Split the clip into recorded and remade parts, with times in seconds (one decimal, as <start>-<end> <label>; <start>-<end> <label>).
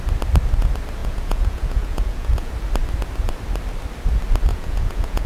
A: 0.0-1.0 recorded; 1.0-2.5 remade; 2.5-4.5 recorded; 4.5-5.3 remade